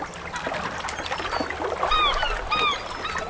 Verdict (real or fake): real